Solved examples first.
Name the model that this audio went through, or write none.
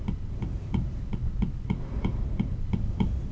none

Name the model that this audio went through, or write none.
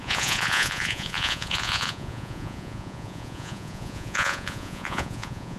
vocoder, Vocos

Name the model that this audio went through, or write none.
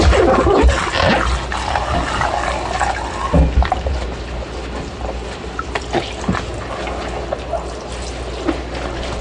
none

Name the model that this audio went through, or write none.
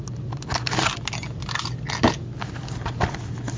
none